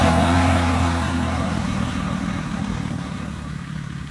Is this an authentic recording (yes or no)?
no